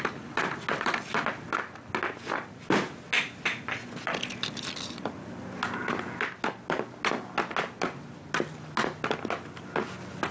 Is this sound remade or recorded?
recorded